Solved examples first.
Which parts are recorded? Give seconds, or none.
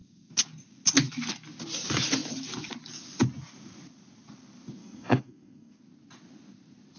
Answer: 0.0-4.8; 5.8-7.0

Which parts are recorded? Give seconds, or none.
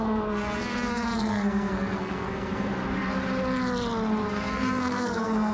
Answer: 2.8-4.3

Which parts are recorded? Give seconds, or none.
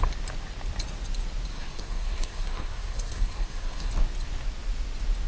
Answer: 0.0-1.5; 3.9-5.3